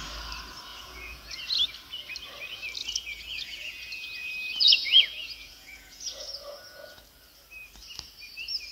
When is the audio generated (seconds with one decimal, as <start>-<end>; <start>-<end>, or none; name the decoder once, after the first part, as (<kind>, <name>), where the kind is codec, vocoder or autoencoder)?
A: 0.7-1.4 (vocoder, Vocos); 2.8-7.0